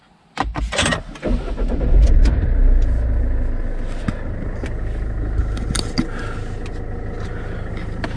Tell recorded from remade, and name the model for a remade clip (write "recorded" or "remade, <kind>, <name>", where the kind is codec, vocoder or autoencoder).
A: recorded